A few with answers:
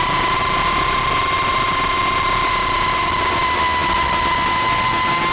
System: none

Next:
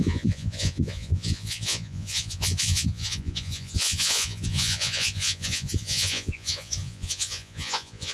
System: vocoder, Vocos